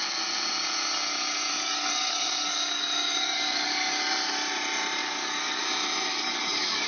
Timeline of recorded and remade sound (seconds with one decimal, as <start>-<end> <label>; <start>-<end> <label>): 0.0-1.5 recorded; 1.5-4.0 remade; 4.0-5.0 recorded; 5.0-5.6 remade; 5.6-6.1 recorded; 6.1-6.9 remade